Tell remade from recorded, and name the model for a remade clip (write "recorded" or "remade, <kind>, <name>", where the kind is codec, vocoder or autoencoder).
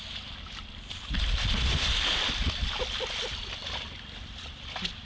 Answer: recorded